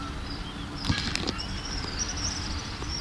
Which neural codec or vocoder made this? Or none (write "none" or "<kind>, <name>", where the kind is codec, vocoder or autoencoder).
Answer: vocoder, BigVGAN v2